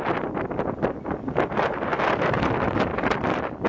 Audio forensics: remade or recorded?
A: recorded